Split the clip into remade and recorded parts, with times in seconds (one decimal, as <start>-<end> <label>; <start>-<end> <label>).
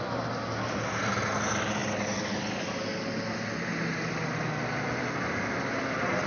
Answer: 0.0-6.3 recorded